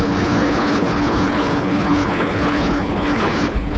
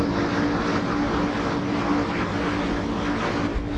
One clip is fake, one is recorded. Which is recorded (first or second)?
second